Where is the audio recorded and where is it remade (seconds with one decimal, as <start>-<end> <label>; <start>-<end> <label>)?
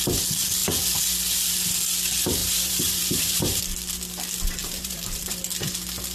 0.0-2.4 recorded; 2.4-3.6 remade; 3.6-4.6 recorded; 4.6-5.4 remade; 5.4-6.1 recorded